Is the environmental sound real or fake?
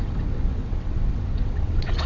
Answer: fake